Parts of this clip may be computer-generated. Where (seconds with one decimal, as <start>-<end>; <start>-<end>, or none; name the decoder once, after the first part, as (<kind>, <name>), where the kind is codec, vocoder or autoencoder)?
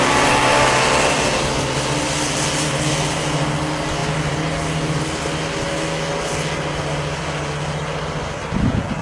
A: none